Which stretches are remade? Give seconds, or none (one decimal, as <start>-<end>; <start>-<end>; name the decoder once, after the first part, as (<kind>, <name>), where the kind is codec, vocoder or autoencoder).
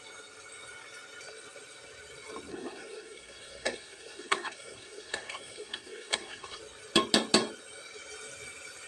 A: 2.5-6.6 (codec, SNAC)